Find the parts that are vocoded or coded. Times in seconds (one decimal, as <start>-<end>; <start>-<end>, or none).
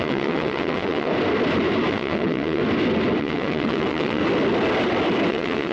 0.0-1.1; 1.9-2.6; 3.2-4.2; 5.3-5.7